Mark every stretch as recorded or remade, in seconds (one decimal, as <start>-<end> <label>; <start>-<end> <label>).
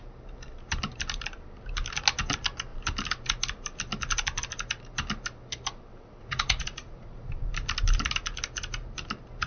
0.0-6.2 recorded; 6.2-7.3 remade; 7.3-9.5 recorded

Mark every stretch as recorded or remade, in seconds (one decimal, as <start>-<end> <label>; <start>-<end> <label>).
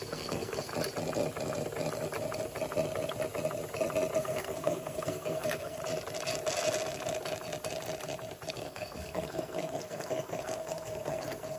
0.0-0.7 remade; 0.7-4.2 recorded; 4.2-5.8 remade; 5.8-8.5 recorded; 8.5-11.6 remade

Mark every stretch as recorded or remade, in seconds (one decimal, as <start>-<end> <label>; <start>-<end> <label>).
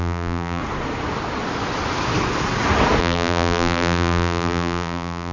0.0-0.6 remade; 0.6-3.0 recorded; 3.0-5.3 remade